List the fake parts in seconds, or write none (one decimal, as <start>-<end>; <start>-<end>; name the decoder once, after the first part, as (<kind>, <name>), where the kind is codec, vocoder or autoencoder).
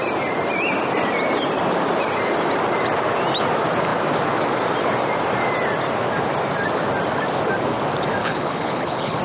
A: 8.2-9.2 (codec, HILCodec)